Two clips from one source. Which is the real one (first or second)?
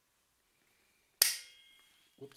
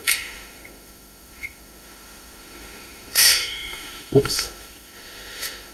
first